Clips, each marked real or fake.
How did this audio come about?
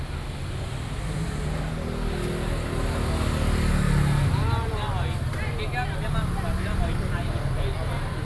real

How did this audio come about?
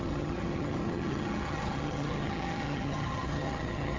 fake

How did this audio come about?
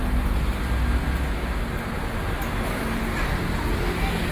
real